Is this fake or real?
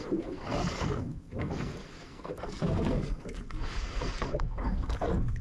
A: fake